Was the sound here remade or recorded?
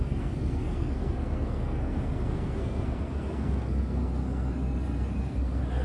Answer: remade